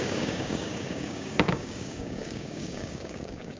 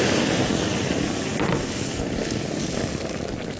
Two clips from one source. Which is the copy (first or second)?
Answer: first